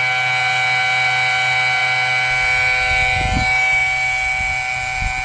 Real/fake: real